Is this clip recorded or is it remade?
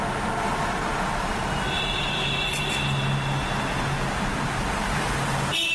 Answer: recorded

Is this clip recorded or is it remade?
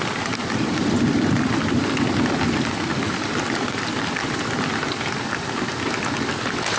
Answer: recorded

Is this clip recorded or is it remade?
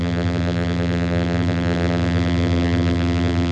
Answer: remade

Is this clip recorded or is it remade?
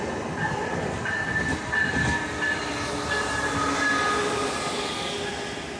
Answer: recorded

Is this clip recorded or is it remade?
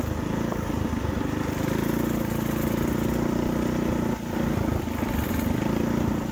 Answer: recorded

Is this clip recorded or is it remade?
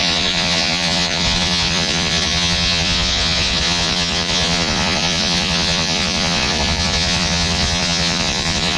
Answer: remade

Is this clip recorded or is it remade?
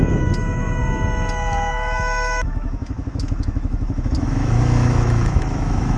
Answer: remade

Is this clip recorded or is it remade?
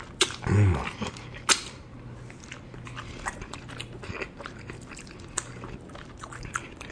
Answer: recorded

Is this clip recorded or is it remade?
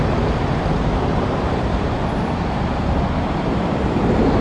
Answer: remade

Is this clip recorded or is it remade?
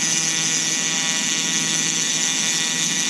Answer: remade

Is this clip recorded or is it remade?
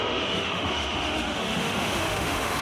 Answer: remade